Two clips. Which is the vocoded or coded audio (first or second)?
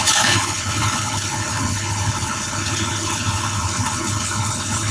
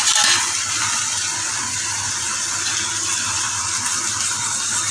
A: first